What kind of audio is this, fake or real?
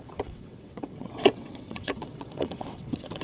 fake